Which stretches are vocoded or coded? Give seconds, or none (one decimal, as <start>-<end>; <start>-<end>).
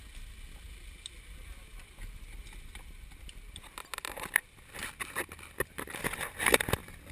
none